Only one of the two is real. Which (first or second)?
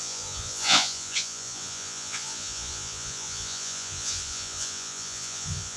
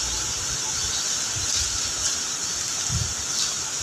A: second